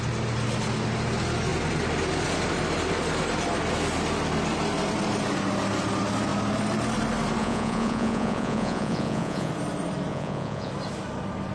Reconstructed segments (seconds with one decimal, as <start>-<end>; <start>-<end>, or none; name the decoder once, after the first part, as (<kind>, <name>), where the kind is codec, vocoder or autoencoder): 7.4-9.5 (vocoder, Vocos); 10.1-10.7